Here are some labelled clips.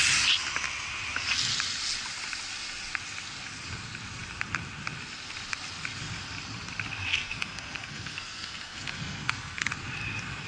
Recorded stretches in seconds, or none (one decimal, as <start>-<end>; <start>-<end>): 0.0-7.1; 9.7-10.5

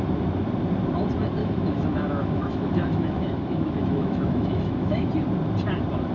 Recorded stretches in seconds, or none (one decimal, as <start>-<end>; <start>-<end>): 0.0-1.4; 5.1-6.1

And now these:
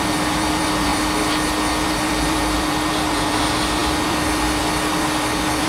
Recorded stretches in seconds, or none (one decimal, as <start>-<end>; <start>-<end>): none